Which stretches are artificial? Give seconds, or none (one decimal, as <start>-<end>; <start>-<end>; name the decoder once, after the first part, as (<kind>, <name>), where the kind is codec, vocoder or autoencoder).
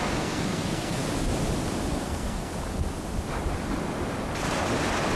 0.0-1.0 (codec, SNAC); 1.9-2.5